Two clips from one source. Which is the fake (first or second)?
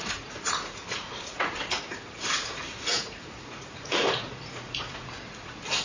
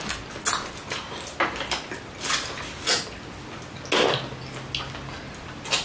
first